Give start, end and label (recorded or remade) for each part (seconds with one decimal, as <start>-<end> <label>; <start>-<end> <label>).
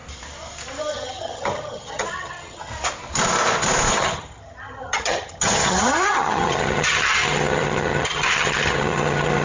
0.0-0.8 recorded; 0.8-2.7 remade; 2.7-3.9 recorded; 3.9-9.4 remade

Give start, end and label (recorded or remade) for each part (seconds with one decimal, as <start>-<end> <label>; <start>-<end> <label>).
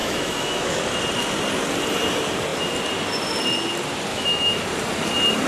0.0-0.8 remade; 0.8-4.1 recorded; 4.1-4.6 remade; 4.6-5.5 recorded